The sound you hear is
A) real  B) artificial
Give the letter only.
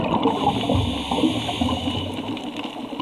A